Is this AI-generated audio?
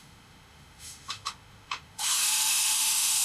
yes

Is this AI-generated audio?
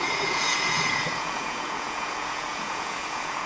yes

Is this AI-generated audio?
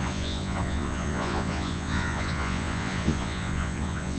yes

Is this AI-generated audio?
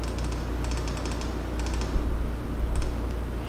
no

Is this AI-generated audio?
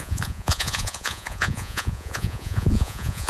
yes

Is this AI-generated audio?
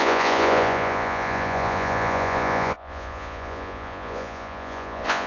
yes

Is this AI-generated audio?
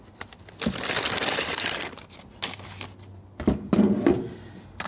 no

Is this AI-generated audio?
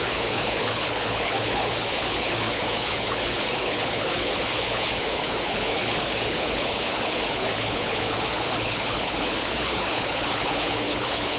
yes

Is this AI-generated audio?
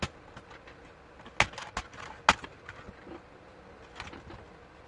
no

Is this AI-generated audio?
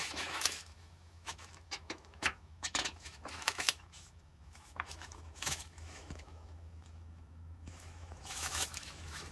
yes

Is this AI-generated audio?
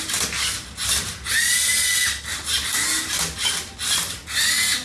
no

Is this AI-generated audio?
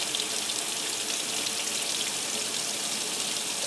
no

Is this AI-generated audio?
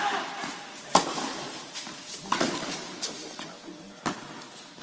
no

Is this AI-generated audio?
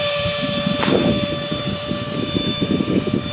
yes